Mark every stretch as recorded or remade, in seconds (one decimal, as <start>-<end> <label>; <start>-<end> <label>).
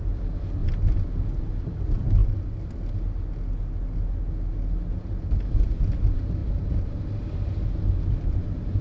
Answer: 0.0-8.8 recorded